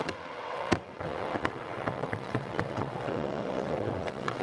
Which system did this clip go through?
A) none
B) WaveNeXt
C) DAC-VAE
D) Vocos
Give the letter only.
B